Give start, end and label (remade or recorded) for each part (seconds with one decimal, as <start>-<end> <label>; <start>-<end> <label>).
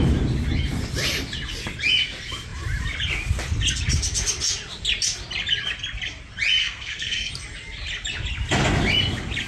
0.0-6.6 recorded; 6.6-7.3 remade; 7.3-9.5 recorded